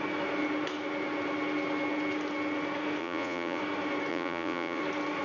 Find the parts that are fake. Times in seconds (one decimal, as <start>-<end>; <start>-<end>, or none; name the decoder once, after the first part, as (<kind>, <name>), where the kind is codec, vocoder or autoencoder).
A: 3.0-3.6 (vocoder, Vocos); 4.1-4.8